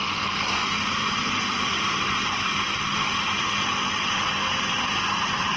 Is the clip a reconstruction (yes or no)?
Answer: yes